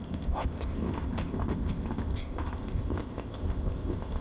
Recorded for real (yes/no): no